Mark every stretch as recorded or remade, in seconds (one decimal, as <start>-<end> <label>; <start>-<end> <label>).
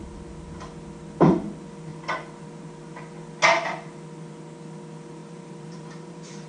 0.0-5.2 recorded; 5.2-6.5 remade